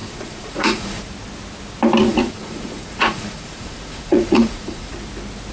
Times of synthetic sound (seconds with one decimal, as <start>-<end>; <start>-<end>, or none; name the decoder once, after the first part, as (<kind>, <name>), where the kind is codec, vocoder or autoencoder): 0.0-1.0 (vocoder, Vocos); 2.0-4.9